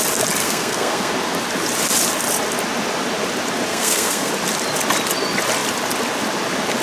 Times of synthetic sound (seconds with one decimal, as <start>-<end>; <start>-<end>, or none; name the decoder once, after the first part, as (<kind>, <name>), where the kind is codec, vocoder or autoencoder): 0.4-1.1 (codec, SNAC); 3.7-4.3